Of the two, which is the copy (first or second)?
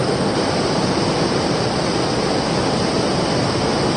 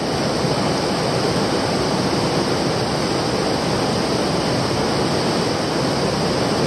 first